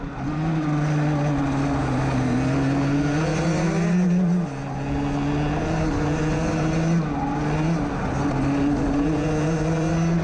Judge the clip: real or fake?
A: real